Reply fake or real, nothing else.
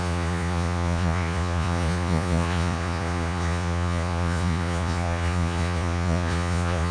fake